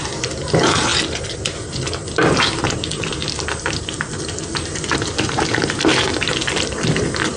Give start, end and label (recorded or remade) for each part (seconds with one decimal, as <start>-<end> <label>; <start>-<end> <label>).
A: 0.0-7.4 recorded